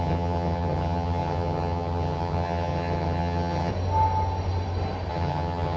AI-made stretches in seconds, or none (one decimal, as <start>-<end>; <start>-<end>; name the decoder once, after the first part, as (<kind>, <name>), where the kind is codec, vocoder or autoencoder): 0.0-3.7 (vocoder, HiFi-GAN); 5.1-5.8